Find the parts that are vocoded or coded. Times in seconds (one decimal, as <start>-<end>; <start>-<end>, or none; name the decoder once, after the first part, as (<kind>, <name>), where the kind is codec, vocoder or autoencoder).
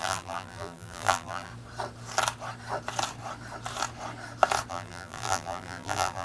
0.0-1.5 (vocoder, BigVGAN v2); 4.7-6.2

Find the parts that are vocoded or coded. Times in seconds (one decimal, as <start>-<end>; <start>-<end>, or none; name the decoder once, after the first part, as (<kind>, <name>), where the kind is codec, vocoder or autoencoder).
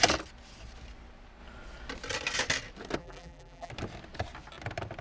3.0-3.7 (vocoder, BigVGAN v2)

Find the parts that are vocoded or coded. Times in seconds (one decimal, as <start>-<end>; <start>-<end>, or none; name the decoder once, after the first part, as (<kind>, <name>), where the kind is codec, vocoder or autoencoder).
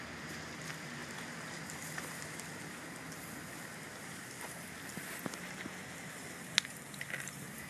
none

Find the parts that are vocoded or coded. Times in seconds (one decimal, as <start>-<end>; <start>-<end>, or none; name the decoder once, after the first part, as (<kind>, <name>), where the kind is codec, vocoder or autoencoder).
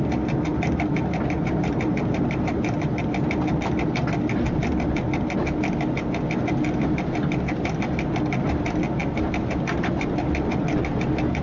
0.5-3.0 (vocoder, BigVGAN v2); 9.0-10.8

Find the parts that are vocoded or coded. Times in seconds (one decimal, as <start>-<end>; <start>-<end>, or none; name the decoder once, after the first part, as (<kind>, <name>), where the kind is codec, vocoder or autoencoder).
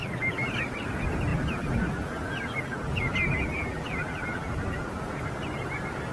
0.0-0.5 (vocoder, BigVGAN v2); 1.3-5.0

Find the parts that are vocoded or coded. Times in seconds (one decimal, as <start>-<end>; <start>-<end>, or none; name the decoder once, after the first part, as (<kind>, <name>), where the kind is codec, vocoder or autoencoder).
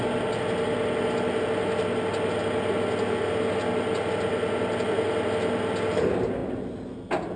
none